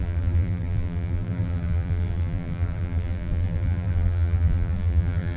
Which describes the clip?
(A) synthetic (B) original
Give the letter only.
A